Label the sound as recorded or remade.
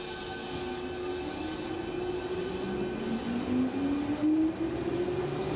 recorded